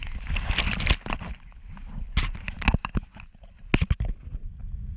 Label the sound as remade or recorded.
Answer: recorded